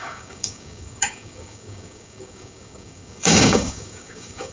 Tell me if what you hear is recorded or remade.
remade